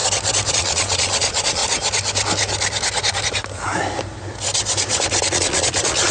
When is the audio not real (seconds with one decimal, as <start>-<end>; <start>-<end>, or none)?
0.5-1.6; 5.3-6.1